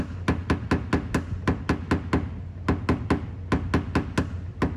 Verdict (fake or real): real